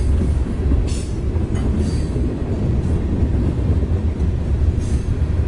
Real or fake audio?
real